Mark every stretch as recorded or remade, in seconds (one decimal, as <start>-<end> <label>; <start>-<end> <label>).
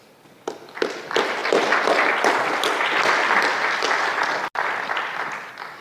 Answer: 0.0-5.8 recorded